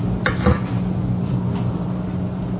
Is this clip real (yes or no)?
yes